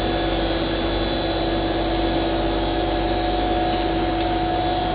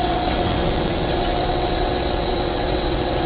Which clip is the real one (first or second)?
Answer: first